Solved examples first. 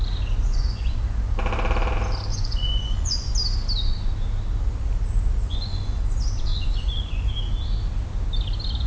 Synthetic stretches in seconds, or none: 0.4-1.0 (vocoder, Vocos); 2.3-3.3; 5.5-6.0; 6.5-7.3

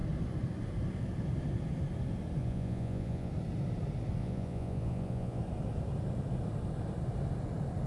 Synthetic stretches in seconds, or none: 2.4-3.3 (vocoder, Vocos); 4.2-5.4

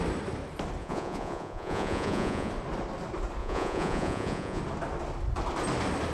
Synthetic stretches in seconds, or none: 0.8-2.5 (vocoder, Vocos); 3.4-4.6

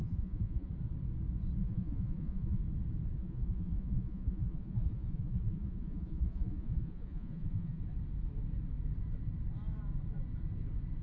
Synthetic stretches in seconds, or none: 0.0-0.7 (vocoder, Vocos); 1.6-2.6; 3.2-7.8

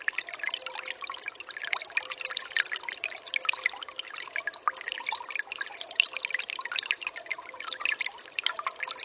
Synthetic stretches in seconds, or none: none

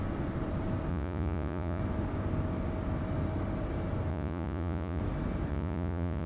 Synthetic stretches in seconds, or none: 0.9-1.8 (vocoder, Vocos); 4.1-5.0; 5.5-6.3

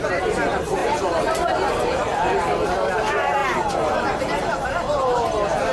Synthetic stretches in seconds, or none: none

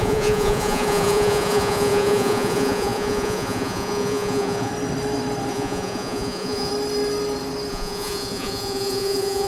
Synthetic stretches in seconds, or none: 0.0-4.7 (vocoder, Vocos); 5.5-6.7; 7.7-9.5